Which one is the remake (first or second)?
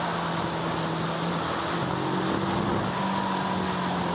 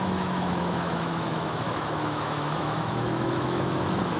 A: second